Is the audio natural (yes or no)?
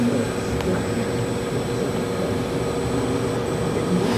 yes